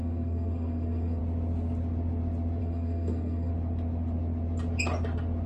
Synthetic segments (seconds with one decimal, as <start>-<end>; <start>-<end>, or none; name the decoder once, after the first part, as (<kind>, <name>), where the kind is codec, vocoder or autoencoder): 0.0-1.2 (codec, SNAC); 2.6-3.5